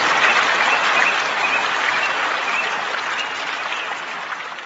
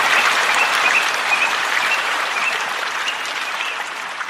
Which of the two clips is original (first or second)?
first